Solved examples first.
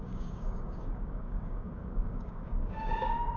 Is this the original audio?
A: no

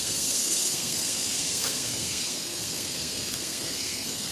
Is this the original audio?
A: no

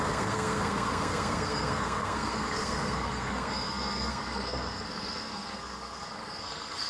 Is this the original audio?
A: no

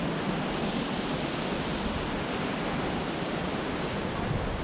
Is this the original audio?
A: yes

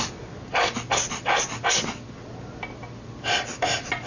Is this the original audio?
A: yes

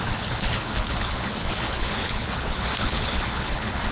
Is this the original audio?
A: no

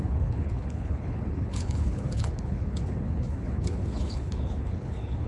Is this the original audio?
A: no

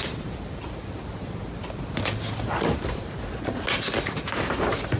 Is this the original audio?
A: yes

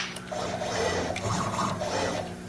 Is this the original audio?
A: no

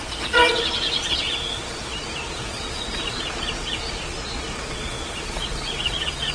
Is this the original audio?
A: no